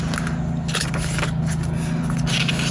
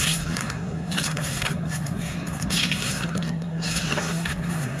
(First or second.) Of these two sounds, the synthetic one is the second